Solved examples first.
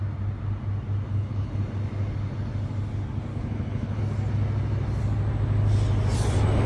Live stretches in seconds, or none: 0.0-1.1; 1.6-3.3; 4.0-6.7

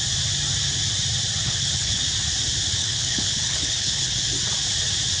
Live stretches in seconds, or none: 0.0-1.4; 2.0-2.8; 4.1-5.2

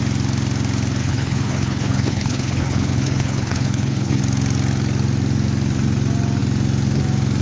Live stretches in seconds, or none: 0.0-1.0; 4.2-7.4

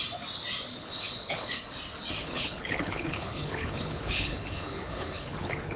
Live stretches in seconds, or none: 0.0-0.7; 1.6-2.2

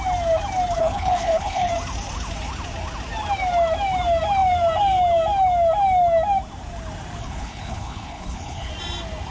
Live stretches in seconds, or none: 0.0-0.8; 1.7-7.2; 8.7-9.3

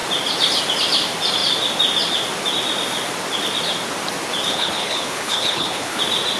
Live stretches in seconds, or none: 0.0-4.5; 6.0-6.4

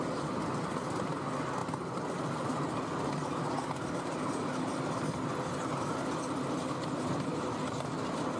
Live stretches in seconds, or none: 0.0-8.4

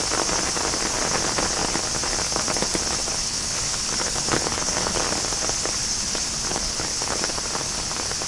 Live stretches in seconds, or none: 0.0-3.2; 5.0-6.5; 7.3-8.3